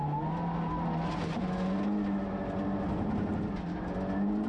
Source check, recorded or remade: recorded